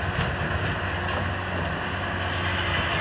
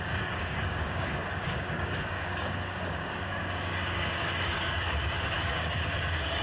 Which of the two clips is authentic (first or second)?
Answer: first